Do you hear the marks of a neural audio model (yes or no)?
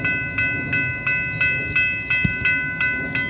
no